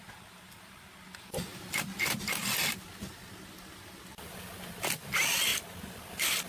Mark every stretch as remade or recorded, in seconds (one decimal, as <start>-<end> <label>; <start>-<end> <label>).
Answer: 0.0-6.5 recorded